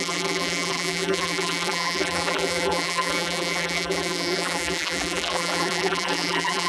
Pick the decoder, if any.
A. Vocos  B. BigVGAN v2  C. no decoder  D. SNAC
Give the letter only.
B